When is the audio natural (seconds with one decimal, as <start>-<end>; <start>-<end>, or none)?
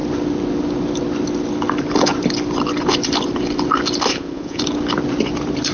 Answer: 0.0-4.1; 4.6-5.7